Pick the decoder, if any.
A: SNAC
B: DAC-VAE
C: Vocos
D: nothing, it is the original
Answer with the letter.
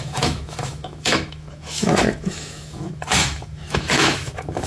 B